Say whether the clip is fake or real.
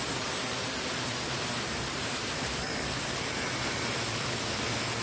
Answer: fake